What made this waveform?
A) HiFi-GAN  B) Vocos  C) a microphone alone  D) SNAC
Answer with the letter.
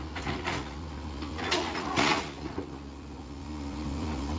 B